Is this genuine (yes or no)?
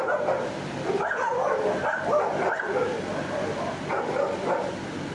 yes